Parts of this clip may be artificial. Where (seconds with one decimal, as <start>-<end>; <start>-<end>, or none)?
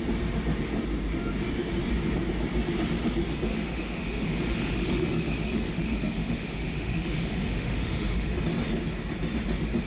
3.5-8.4